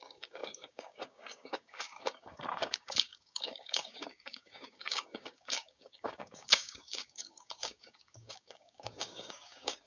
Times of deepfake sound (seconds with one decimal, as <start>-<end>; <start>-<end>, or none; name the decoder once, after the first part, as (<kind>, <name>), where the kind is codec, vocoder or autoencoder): 0.0-9.9 (codec, DAC)